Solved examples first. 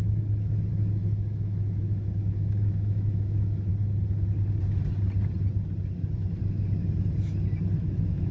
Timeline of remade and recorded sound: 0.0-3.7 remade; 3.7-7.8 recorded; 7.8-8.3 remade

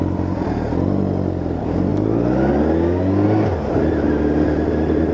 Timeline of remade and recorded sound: 0.0-5.1 recorded